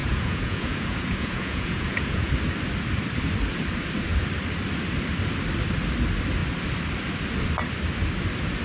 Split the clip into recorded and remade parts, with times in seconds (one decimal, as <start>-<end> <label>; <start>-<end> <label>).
0.0-2.3 remade; 2.3-8.6 recorded